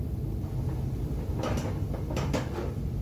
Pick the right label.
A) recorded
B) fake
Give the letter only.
A